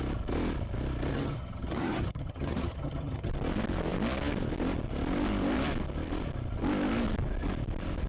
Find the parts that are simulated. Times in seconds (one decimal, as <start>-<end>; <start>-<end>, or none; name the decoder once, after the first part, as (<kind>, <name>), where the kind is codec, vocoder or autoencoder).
1.1-3.3 (vocoder, HiFi-GAN)